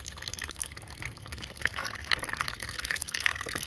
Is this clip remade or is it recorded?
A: remade